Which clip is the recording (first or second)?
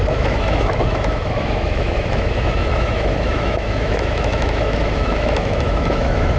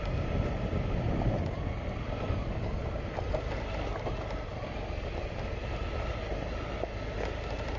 second